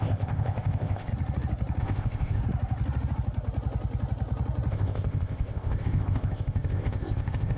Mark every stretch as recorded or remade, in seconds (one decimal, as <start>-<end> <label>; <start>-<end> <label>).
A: 0.0-1.1 remade; 1.1-1.8 recorded; 1.8-2.4 remade; 2.4-4.7 recorded; 4.7-7.6 remade